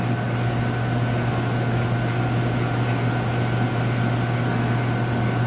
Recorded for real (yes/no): yes